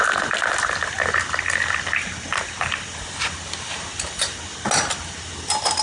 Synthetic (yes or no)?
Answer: no